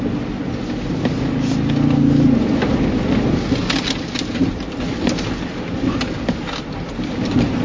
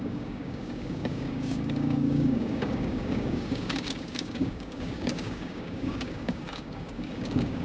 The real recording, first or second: first